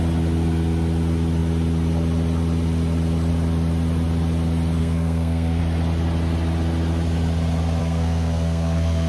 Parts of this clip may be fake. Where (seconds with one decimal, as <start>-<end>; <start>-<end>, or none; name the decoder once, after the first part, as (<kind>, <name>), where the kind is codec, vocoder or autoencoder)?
4.8-5.6 (codec, SNAC); 7.8-9.1